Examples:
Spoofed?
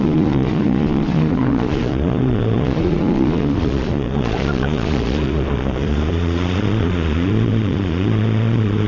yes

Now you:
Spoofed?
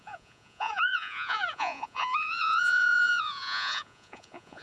yes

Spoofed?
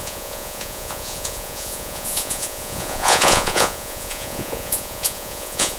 yes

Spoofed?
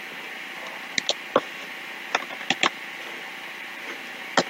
no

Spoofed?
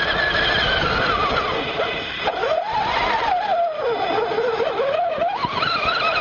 no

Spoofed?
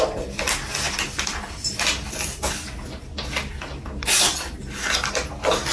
no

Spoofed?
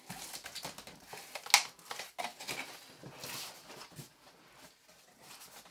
no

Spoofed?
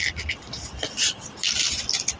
no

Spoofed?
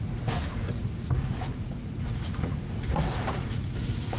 yes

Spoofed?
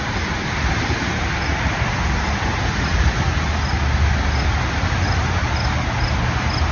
no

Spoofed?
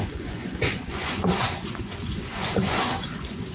yes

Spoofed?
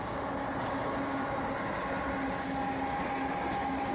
no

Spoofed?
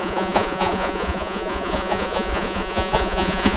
yes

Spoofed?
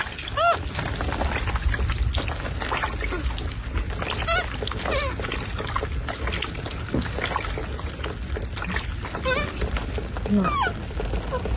no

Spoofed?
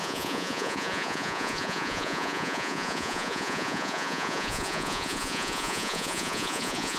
yes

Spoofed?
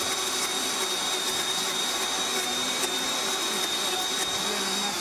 no